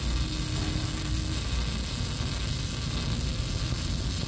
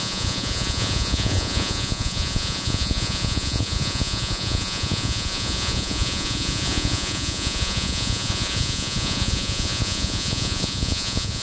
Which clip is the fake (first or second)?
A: second